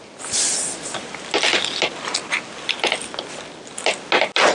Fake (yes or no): no